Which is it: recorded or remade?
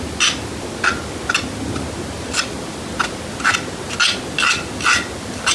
recorded